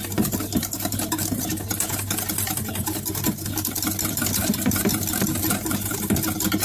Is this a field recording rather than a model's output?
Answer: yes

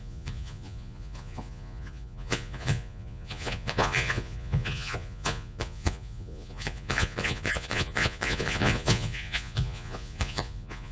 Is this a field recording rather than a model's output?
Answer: no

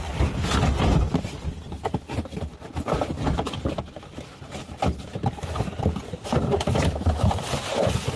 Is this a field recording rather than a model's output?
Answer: yes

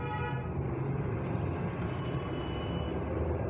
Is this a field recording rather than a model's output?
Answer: yes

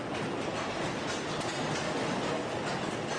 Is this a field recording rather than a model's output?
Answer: yes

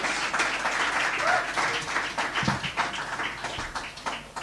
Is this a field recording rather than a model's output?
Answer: yes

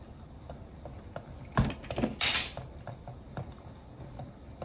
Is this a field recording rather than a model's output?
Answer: yes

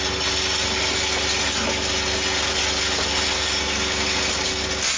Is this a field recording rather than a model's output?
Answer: yes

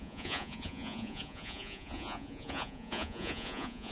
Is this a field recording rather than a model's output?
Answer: no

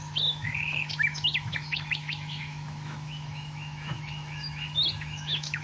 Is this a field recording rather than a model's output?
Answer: no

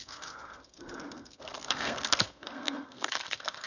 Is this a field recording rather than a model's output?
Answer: no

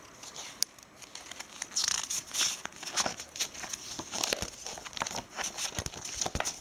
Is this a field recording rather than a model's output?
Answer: yes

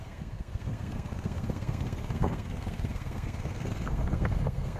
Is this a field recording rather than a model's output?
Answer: no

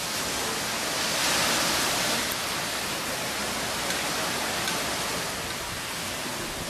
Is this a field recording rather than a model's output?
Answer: yes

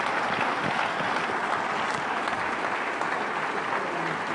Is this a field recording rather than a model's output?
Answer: yes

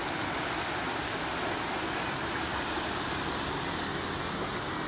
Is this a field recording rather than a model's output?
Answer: yes